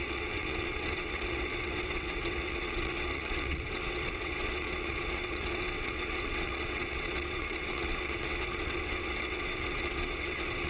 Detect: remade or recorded remade